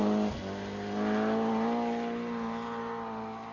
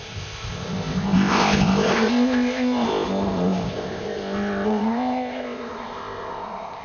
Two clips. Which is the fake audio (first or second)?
second